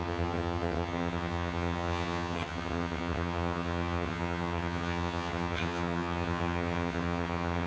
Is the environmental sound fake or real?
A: fake